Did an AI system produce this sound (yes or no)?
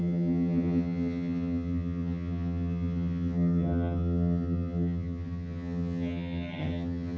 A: yes